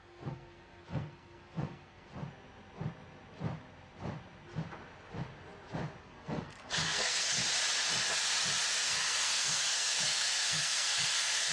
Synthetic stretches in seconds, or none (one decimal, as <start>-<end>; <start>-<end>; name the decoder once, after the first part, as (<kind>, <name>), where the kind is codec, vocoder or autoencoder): 0.0-2.1 (codec, SNAC); 6.0-7.4; 8.7-11.5